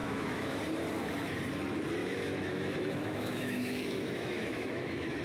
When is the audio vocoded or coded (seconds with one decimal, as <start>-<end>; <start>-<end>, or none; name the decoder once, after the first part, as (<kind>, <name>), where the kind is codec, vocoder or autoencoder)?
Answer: 0.0-0.6 (autoencoder, DAC-VAE); 2.0-5.2